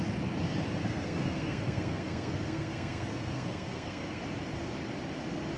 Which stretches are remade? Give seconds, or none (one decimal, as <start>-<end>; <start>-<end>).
0.8-4.2